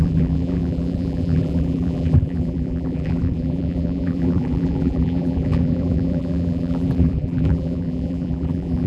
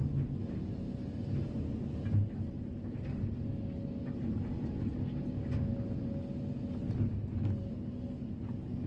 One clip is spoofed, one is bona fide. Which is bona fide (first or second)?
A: second